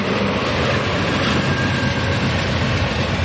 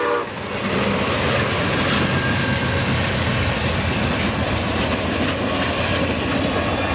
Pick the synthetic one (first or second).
first